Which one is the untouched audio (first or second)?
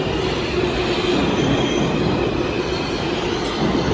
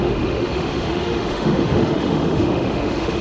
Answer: first